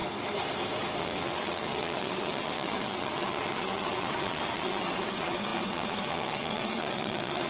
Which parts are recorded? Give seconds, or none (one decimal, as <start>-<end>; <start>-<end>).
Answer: 0.0-1.0